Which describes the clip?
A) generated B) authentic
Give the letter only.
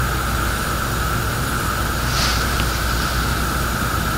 B